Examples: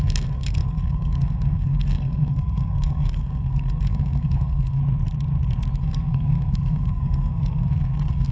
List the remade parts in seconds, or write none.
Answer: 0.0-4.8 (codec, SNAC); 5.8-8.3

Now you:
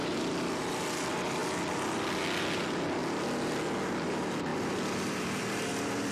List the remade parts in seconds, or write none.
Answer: 0.0-0.6 (vocoder, BigVGAN v2); 4.5-6.1

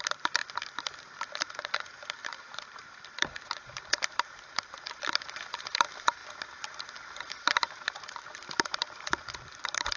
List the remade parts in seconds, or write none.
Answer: 0.0-0.4 (vocoder, BigVGAN v2); 1.2-6.2; 7.2-10.0

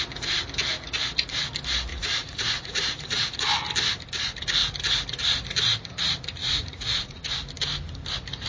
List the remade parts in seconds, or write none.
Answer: 1.9-3.4 (vocoder, Vocos); 6.4-7.3

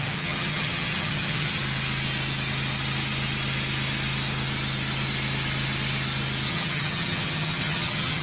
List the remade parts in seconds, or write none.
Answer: 0.0-1.6 (vocoder, HiFi-GAN); 6.5-8.2

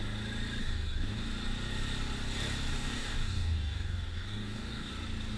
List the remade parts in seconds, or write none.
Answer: 0.6-1.3 (codec, DAC); 2.7-4.9

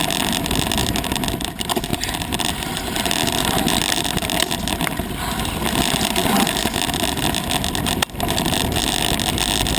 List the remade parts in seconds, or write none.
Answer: 1.9-2.7 (vocoder, BigVGAN v2)